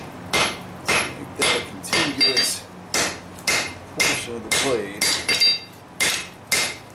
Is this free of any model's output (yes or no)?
yes